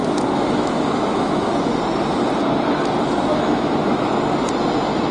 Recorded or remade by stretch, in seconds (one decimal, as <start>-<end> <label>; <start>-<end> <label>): 0.0-1.7 remade; 1.7-3.3 recorded; 3.3-4.1 remade; 4.1-5.1 recorded